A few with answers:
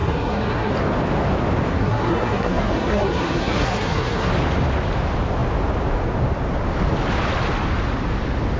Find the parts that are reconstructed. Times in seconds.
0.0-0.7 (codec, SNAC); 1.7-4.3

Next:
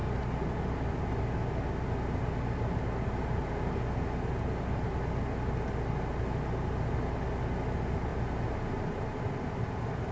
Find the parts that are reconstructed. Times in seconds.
none